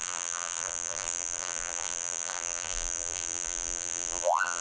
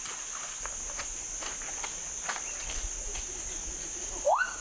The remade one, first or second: first